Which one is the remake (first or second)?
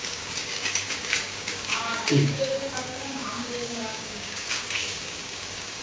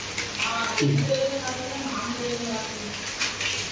first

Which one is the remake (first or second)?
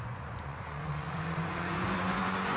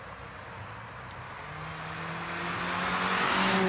first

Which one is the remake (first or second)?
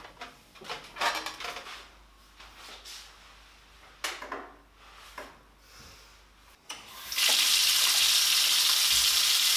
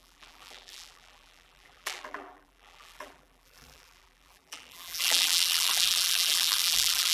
second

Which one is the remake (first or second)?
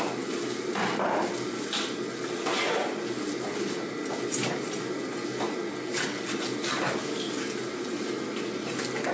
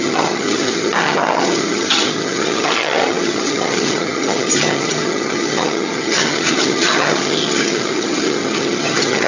second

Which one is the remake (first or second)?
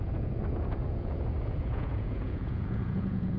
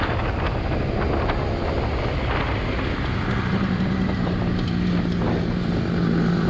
first